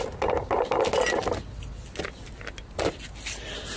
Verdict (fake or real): real